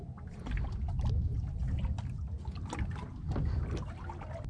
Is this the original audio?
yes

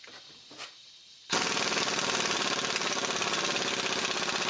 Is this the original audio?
yes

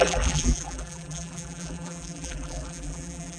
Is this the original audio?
no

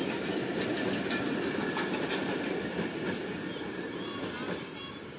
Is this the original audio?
yes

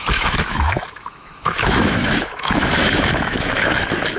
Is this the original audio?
no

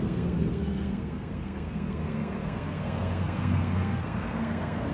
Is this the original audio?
no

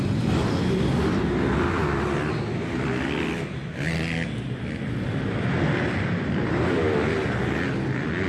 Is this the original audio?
yes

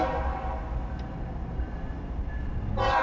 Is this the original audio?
yes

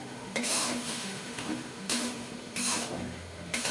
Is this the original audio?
no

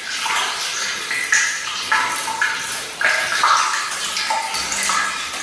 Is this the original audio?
yes